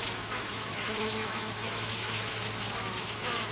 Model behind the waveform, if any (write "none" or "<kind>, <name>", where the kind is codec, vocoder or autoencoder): autoencoder, DAC-VAE